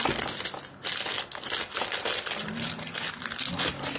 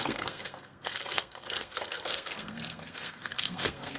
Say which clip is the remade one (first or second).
second